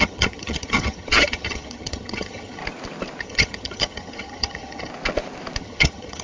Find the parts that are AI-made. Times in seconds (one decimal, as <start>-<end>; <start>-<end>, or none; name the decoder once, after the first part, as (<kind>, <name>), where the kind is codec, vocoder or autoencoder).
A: 0.0-2.6 (vocoder, HiFi-GAN); 3.2-4.9; 5.6-6.2